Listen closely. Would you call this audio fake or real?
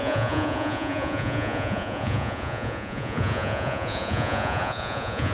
fake